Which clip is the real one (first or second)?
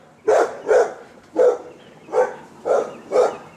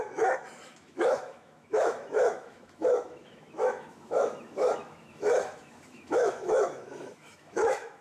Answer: first